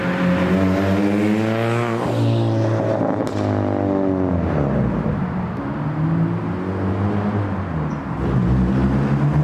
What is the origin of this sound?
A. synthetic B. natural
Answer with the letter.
B